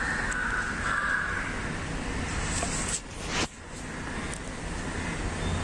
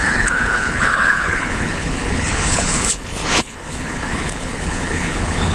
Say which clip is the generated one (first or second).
second